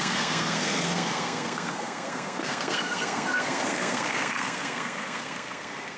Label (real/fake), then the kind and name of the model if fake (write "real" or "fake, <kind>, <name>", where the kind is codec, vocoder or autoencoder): fake, codec, SNAC